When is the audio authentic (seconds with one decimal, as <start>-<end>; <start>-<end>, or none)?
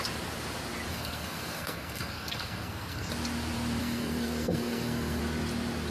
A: 0.0-0.9; 3.1-3.8; 5.2-5.9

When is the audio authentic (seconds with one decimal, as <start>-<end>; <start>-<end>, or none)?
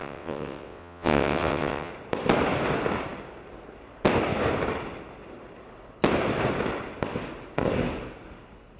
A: 1.9-8.8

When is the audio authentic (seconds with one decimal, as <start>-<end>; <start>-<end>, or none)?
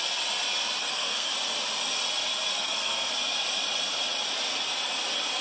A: 0.0-0.8; 1.3-2.5; 3.1-5.4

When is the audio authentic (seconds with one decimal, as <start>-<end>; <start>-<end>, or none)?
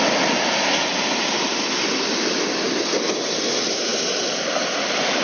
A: 0.0-5.2